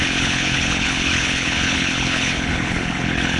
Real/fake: fake